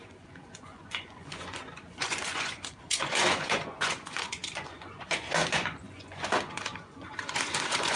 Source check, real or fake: fake